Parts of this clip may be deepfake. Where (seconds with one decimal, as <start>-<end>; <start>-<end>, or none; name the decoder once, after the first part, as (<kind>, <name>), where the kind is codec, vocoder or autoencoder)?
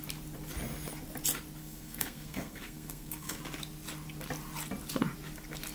1.6-3.4 (codec, SNAC)